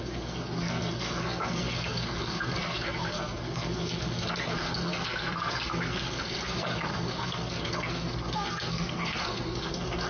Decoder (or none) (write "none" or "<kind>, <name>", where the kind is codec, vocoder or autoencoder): codec, SNAC